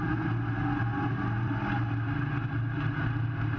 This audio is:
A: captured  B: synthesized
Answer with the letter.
A